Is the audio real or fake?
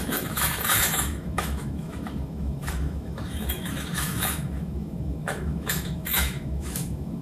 fake